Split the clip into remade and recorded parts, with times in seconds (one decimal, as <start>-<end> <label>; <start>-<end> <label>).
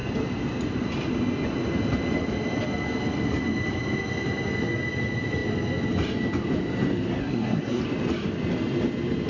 0.0-7.2 recorded; 7.2-7.8 remade; 7.8-9.3 recorded